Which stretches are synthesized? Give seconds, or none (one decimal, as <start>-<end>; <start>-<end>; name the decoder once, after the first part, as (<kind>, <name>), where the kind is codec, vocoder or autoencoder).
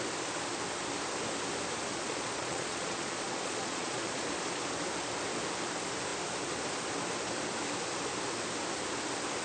1.9-4.2 (vocoder, Vocos)